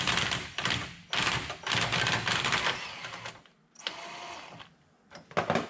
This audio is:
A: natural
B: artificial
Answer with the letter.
A